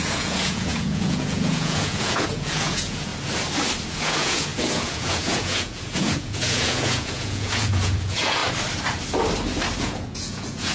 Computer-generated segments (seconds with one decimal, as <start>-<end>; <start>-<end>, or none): 0.0-3.1; 3.9-8.4; 9.8-10.7